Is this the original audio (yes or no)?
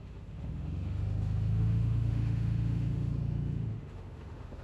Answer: no